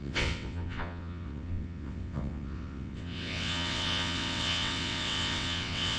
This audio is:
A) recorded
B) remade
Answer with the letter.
B